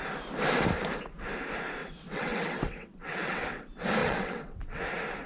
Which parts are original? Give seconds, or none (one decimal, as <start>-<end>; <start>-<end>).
0.0-1.8; 3.4-4.0; 4.8-5.3